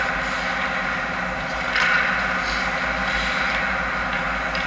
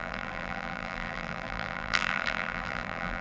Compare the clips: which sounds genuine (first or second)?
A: first